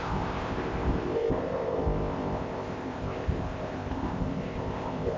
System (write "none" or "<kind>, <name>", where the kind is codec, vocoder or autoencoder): codec, ZipCodec